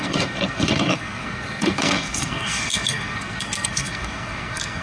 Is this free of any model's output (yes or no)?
no